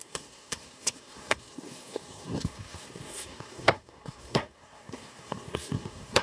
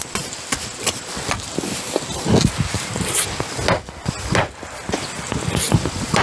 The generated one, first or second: first